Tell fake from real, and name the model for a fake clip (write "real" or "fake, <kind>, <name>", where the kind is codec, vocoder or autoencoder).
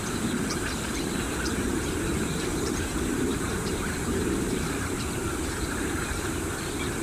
fake, vocoder, BigVGAN v2